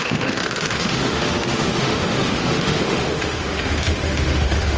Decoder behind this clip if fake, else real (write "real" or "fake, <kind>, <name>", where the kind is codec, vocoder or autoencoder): fake, autoencoder, DAC-VAE